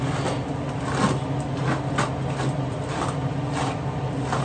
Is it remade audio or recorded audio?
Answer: recorded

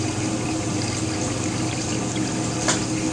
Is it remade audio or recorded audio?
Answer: remade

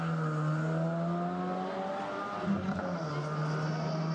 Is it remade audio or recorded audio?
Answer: recorded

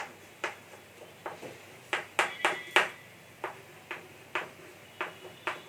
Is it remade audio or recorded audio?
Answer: recorded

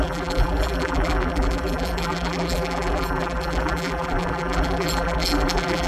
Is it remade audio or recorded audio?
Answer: remade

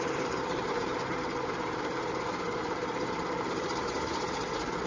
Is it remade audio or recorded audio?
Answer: remade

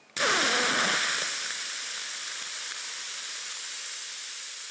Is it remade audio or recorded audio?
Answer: recorded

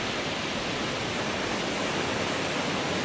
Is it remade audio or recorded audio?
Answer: recorded